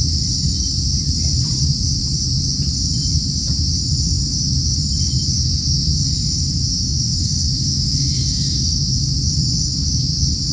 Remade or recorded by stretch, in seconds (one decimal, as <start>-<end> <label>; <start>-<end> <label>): 0.0-6.7 recorded; 6.7-9.1 remade; 9.1-10.5 recorded